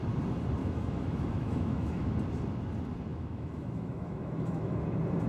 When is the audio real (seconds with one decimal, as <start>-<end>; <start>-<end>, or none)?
0.0-0.6; 2.1-3.1; 4.8-5.3